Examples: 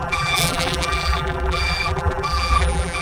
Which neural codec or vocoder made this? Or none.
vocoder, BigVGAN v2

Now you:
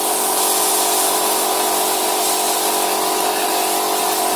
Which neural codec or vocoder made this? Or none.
none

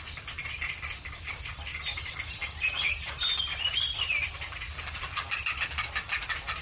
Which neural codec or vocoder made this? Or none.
vocoder, BigVGAN v2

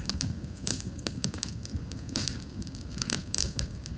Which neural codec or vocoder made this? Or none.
codec, SNAC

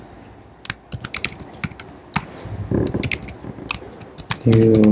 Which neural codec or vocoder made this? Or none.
none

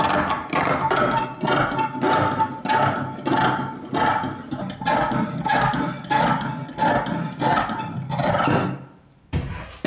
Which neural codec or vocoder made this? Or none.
none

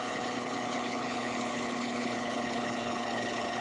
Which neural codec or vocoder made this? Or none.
codec, HILCodec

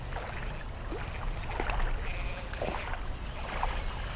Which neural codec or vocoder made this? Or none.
none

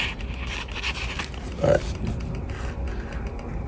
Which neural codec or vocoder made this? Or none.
none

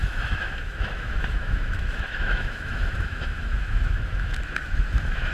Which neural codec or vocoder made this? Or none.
autoencoder, DAC-VAE